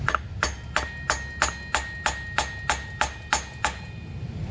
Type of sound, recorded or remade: recorded